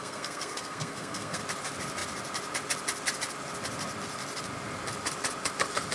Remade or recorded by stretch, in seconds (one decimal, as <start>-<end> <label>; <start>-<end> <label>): 0.0-1.4 remade; 1.4-5.9 recorded